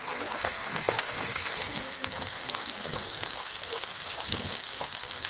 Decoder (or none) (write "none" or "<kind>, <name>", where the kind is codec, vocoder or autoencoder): codec, SNAC